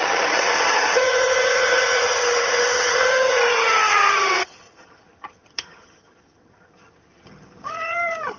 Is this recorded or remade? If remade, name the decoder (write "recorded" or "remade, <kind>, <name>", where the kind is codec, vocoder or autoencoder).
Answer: remade, vocoder, HiFi-GAN